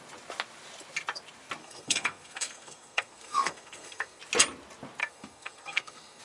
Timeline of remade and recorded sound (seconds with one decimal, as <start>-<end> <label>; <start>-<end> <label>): 0.0-1.6 recorded; 1.6-4.2 remade; 4.2-5.0 recorded; 5.0-6.2 remade